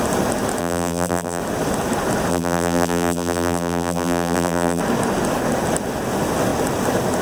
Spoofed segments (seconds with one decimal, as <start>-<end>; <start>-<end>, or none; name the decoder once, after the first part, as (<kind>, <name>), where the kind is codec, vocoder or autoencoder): 0.6-1.4 (vocoder, BigVGAN v2); 2.3-4.8